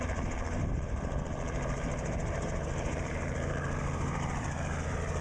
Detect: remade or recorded remade